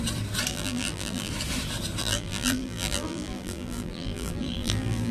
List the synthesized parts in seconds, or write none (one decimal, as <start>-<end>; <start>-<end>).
0.5-1.3; 2.0-5.1